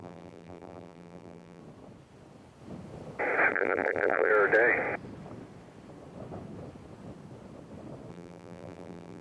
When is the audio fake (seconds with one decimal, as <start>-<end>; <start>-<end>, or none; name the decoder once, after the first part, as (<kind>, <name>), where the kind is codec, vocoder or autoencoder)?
0.0-1.6 (vocoder, BigVGAN v2); 3.5-4.3; 8.1-9.2